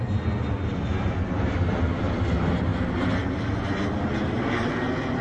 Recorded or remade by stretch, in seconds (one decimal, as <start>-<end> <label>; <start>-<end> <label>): 0.0-5.2 recorded